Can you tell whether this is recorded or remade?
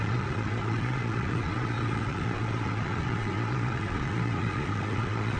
remade